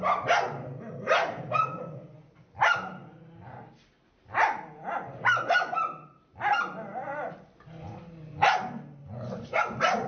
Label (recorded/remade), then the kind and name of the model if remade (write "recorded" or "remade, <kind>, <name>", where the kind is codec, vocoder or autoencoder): recorded